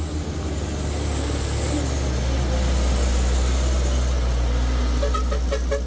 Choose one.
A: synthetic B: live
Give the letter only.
B